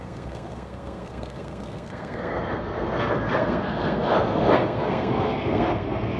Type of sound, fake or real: fake